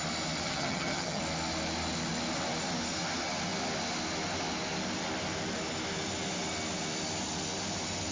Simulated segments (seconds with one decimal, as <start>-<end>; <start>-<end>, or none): 0.4-1.2